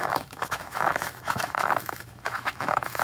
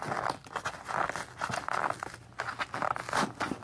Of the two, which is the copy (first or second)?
first